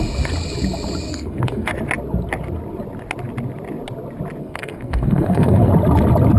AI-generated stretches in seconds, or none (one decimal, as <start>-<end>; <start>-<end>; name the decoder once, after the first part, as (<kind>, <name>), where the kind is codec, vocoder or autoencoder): 1.1-1.7 (codec, SNAC); 4.4-5.7